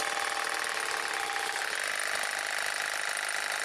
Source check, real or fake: real